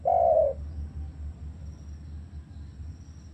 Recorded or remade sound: recorded